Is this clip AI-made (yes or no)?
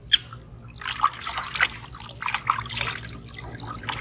no